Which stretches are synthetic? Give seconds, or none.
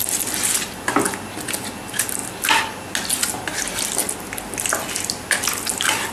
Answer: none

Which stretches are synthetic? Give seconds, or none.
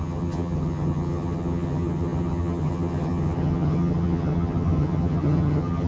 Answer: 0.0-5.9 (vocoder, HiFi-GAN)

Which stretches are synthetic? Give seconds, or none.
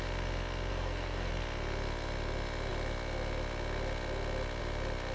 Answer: 0.7-1.3 (codec, SNAC)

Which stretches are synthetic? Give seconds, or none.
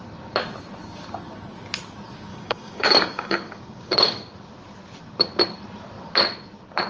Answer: 2.3-4.3 (codec, DAC)